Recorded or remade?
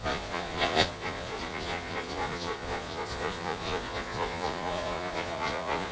remade